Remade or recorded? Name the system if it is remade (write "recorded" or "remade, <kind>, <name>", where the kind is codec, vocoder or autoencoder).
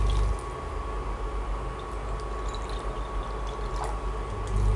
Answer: recorded